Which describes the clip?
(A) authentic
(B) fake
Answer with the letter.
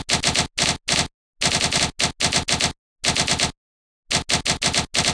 A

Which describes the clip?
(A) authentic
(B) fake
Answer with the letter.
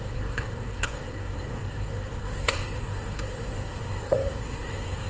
B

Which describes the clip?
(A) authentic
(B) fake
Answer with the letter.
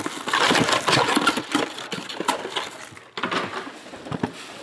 A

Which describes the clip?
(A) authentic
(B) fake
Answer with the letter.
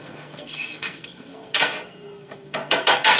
B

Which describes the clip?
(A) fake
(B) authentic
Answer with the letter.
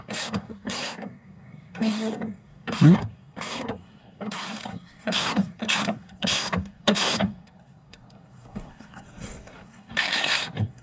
A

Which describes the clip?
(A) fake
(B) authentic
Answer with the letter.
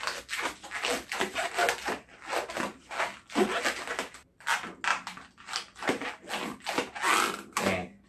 B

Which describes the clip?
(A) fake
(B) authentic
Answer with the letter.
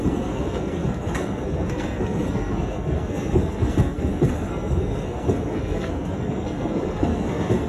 A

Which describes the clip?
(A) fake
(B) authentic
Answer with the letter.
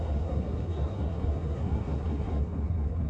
A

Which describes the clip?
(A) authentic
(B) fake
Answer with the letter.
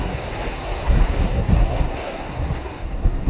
B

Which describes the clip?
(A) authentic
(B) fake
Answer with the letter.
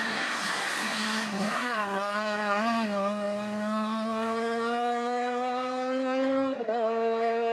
B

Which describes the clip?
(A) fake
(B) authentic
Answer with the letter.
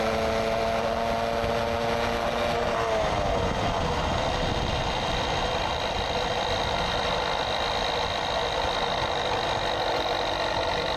B